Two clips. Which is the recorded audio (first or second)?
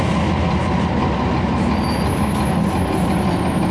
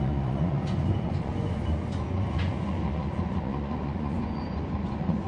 first